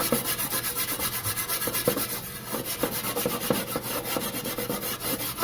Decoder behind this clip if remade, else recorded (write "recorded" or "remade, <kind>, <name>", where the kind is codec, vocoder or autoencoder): recorded